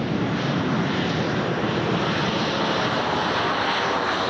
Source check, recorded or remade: recorded